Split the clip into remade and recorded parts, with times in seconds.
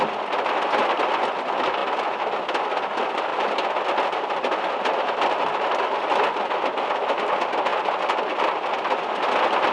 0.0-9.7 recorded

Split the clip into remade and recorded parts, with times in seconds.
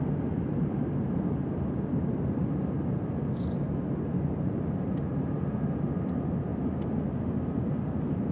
0.0-8.3 recorded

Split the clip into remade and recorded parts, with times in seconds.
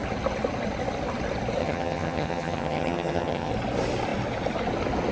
0.0-1.6 recorded; 1.6-3.5 remade; 3.5-5.1 recorded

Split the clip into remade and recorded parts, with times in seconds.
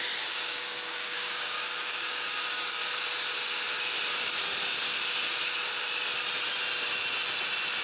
0.0-2.8 remade; 2.8-7.8 recorded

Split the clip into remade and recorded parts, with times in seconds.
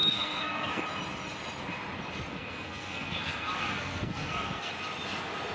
0.0-0.8 remade; 0.8-2.3 recorded; 2.3-4.7 remade; 4.7-5.5 recorded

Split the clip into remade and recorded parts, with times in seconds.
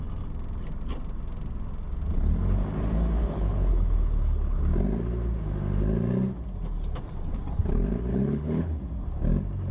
0.0-3.2 recorded; 3.2-4.6 remade; 4.6-8.1 recorded; 8.1-8.8 remade; 8.8-9.7 recorded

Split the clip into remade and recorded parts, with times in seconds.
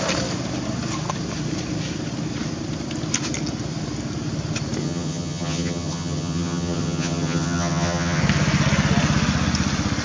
0.0-4.8 recorded; 4.8-8.2 remade; 8.2-10.0 recorded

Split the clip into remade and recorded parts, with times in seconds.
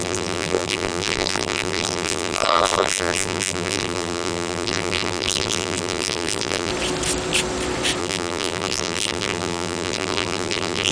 0.0-6.7 remade; 6.7-8.0 recorded; 8.0-10.9 remade